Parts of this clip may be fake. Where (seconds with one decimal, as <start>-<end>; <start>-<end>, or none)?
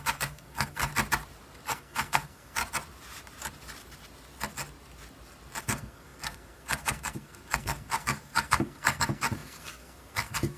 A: 0.0-0.9; 1.7-2.6; 5.6-10.6